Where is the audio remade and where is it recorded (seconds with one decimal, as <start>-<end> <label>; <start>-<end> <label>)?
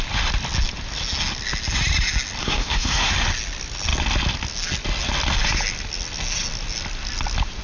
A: 0.0-2.4 recorded; 2.4-3.1 remade; 3.1-7.6 recorded